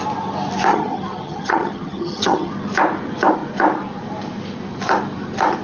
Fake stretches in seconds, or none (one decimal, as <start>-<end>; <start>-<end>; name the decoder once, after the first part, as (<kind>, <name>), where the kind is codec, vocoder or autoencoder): 0.7-2.5 (vocoder, HiFi-GAN)